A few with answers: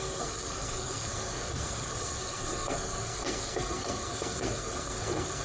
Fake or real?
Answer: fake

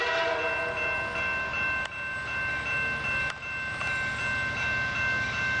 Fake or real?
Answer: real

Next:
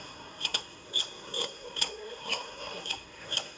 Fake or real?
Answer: fake